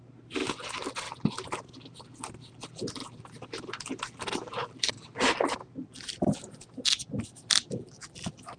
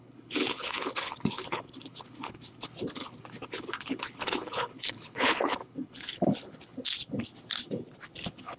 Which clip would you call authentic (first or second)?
first